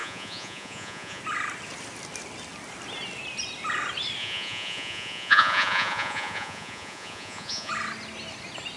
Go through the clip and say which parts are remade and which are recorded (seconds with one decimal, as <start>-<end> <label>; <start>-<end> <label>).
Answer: 0.0-1.2 remade; 1.2-4.2 recorded; 4.2-7.7 remade; 7.7-8.8 recorded